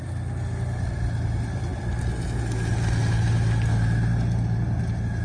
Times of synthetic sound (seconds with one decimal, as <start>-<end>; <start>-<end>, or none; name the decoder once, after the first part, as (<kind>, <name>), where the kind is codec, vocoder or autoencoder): none